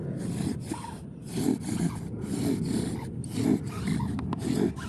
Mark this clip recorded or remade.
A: recorded